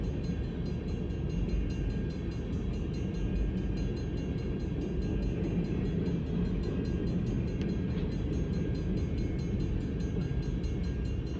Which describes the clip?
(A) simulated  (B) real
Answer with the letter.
B